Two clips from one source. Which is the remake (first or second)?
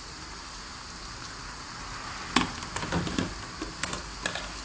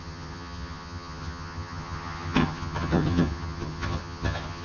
second